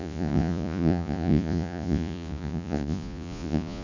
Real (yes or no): no